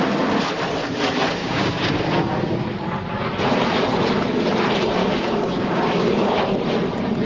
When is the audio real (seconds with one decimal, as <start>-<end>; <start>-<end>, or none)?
0.0-1.4; 1.9-5.0; 6.4-7.3